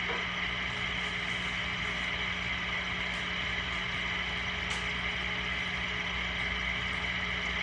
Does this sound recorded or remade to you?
recorded